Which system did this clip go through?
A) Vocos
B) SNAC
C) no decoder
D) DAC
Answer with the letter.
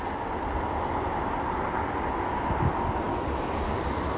C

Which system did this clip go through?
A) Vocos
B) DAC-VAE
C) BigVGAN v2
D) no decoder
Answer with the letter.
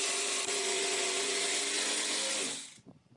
A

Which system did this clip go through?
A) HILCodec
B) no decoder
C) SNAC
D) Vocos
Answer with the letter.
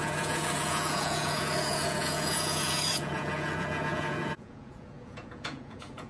D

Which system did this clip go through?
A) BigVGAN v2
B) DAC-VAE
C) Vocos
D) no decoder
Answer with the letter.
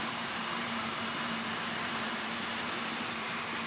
D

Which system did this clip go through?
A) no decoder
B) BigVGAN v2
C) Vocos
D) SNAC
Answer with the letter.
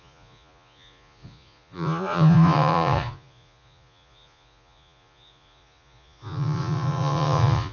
C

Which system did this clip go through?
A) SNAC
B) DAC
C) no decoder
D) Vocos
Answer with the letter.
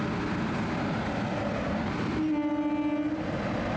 C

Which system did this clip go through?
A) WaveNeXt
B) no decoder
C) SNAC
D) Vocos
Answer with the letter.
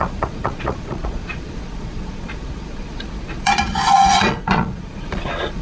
D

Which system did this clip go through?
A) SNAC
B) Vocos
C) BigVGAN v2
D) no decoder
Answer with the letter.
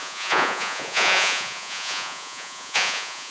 B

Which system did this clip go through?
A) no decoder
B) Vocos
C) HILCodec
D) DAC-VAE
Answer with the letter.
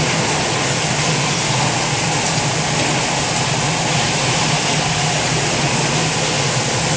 A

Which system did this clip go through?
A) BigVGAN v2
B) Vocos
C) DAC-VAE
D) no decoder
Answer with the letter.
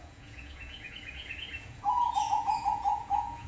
B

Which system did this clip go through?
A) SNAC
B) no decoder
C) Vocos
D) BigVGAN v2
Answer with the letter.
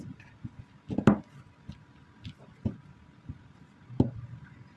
B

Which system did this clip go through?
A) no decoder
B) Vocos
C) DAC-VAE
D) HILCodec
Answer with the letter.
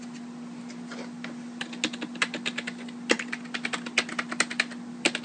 A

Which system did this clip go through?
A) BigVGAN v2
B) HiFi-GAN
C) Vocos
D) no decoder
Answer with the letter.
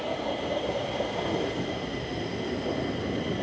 D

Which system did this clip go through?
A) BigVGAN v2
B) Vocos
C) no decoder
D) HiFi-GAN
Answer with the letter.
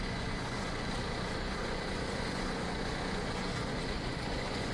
B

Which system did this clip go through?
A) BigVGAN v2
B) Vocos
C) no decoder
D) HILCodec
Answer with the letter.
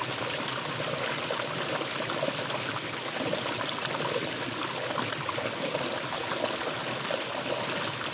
C